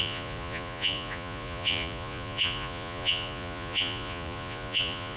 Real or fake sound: fake